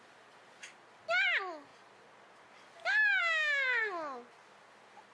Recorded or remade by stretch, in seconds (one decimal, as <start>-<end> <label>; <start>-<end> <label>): 0.0-5.1 recorded